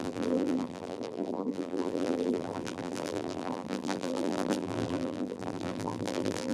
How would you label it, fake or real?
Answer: fake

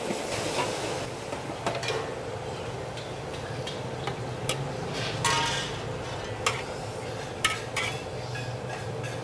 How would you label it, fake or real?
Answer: real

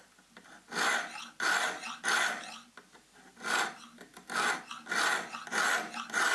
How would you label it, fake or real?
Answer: real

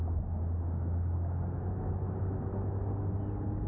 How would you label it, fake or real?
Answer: real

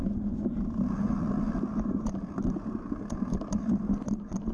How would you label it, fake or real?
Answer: real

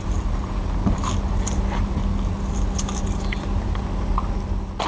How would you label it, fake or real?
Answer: real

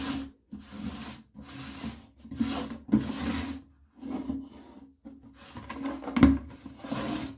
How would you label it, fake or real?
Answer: real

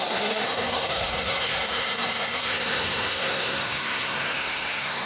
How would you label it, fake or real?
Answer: fake